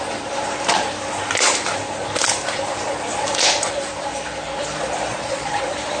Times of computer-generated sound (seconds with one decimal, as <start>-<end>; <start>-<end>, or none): 5.1-5.6

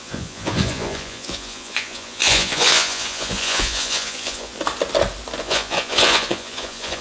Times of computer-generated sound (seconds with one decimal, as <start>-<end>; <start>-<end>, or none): 0.0-4.5; 5.4-7.0

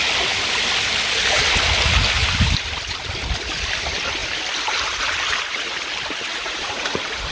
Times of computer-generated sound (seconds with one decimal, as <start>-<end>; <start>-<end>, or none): 6.3-7.3

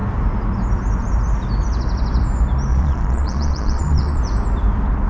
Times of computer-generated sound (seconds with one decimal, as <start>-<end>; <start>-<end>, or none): 2.7-4.2